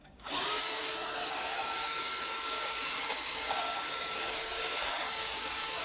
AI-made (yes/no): yes